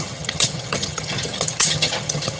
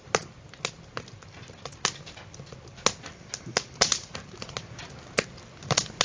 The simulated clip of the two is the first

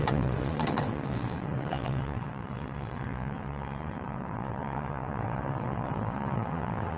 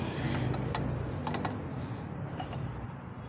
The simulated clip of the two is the first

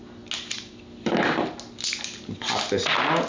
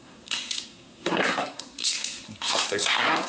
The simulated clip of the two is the second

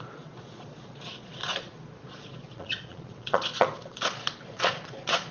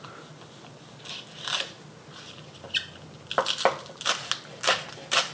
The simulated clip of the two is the first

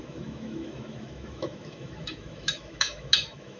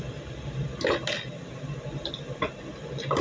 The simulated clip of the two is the first